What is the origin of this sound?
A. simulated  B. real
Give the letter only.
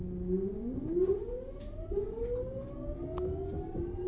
B